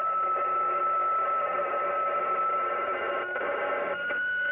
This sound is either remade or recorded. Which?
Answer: recorded